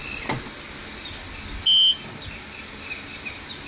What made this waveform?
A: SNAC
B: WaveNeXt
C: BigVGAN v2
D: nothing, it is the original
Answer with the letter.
D